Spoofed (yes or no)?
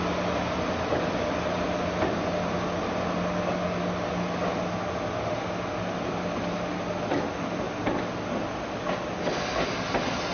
no